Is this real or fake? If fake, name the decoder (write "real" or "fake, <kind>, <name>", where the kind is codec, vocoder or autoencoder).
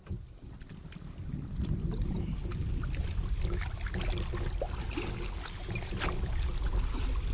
real